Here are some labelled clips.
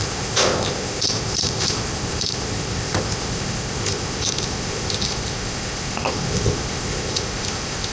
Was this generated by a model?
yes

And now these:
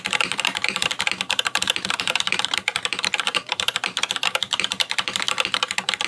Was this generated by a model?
yes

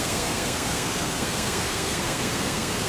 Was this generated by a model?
yes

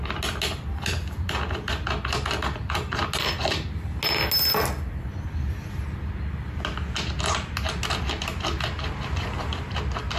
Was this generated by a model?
no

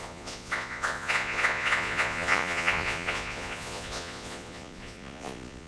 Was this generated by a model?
yes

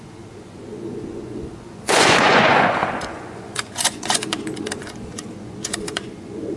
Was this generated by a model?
yes